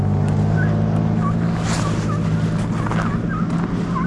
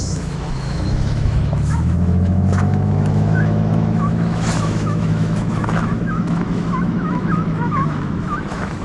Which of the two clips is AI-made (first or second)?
second